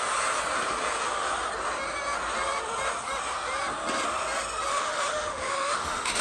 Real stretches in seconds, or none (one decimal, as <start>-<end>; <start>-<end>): 0.0-4.7